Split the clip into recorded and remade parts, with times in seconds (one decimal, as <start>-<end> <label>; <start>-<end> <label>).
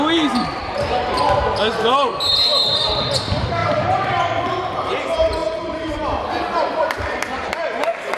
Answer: 0.0-0.6 recorded; 0.6-1.2 remade; 1.2-3.6 recorded; 3.6-4.2 remade; 4.2-8.2 recorded